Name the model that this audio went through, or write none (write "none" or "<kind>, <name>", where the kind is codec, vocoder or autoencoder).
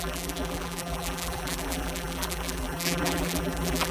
vocoder, BigVGAN v2